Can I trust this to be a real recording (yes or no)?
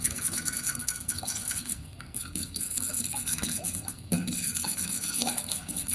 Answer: no